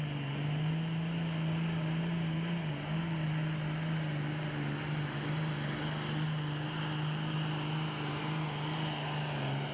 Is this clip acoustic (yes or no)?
yes